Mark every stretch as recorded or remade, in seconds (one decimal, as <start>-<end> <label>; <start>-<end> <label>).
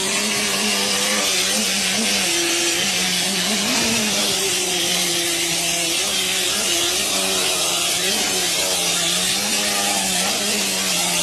0.0-3.7 recorded; 3.7-5.1 remade; 5.1-11.2 recorded